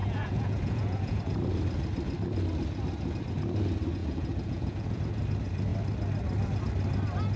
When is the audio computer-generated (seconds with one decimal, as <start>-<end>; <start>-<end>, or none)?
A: 0.0-1.2; 4.0-5.0